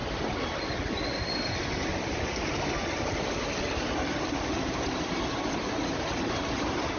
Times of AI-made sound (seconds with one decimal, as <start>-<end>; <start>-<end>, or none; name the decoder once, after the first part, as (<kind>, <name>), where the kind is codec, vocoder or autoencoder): none

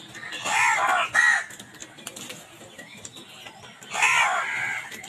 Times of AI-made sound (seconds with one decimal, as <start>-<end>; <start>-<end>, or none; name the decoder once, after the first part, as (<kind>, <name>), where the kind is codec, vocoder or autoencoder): none